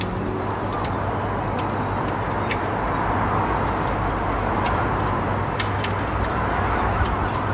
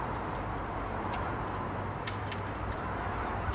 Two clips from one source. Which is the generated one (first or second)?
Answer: second